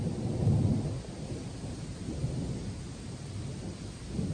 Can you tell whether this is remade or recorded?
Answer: recorded